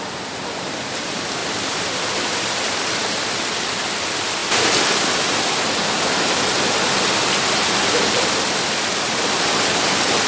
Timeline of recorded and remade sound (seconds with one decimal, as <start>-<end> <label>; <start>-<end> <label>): 0.0-10.3 recorded